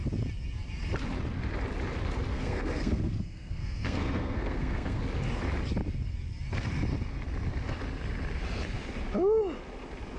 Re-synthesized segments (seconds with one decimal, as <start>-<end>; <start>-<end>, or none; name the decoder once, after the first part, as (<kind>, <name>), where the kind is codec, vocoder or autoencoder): 2.3-5.0 (codec, SNAC)